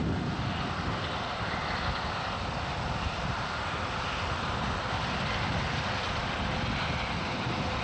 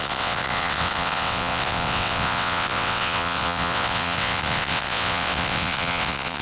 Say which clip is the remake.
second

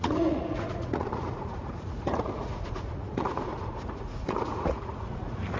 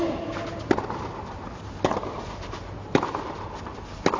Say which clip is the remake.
first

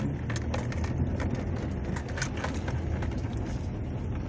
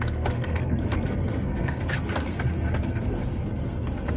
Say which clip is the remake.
second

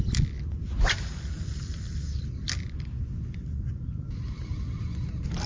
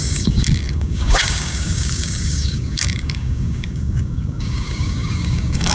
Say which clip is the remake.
second